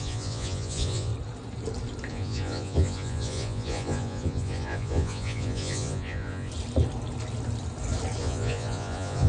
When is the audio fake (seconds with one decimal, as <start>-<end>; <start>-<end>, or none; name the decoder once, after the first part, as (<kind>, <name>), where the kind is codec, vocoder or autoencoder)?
0.0-1.1 (vocoder, Vocos); 2.1-6.5; 8.2-9.3